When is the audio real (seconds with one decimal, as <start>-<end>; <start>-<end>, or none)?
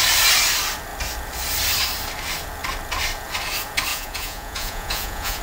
0.0-3.9